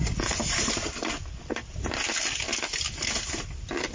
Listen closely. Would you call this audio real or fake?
real